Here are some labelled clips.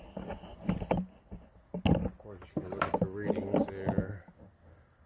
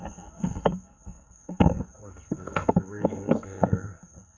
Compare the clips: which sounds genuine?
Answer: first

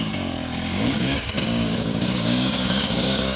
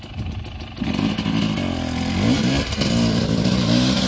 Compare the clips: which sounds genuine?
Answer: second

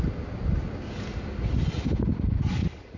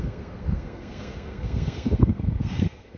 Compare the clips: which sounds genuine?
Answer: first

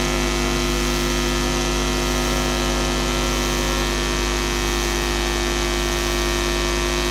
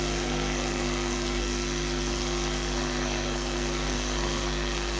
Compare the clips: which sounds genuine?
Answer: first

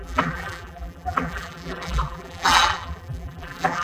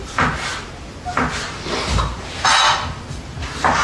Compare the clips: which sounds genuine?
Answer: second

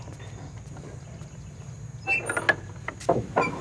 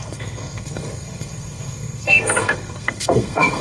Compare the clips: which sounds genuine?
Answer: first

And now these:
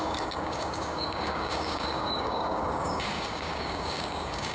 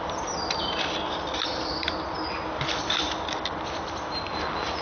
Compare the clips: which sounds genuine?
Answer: second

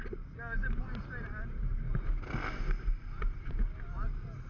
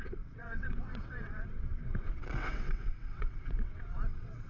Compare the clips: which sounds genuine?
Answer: first